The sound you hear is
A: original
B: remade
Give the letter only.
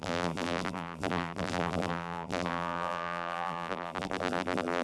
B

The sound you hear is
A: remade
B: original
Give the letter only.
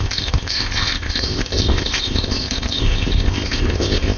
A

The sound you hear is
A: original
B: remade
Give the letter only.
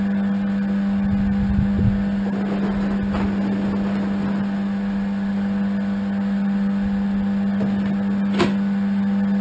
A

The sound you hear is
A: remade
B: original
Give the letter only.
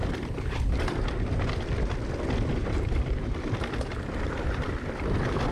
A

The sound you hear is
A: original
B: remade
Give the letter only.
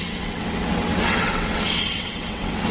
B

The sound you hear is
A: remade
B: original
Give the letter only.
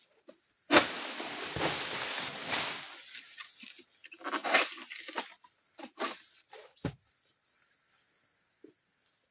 B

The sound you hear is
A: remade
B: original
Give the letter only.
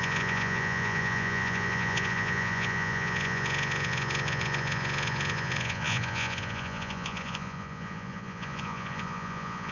A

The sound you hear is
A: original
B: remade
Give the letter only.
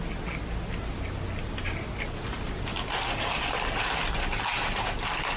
A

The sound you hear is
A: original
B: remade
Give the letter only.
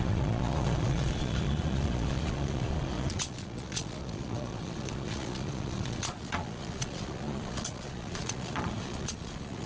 B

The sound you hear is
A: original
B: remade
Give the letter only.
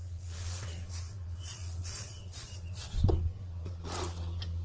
B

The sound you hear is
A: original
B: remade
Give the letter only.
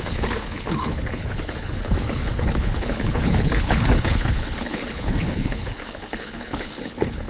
B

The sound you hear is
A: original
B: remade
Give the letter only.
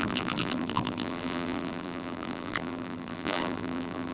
B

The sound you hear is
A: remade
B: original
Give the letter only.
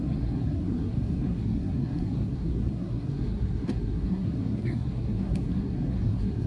A